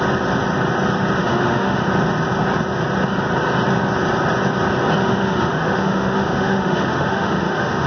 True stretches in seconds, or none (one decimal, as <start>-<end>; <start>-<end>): 0.0-1.2; 1.9-5.0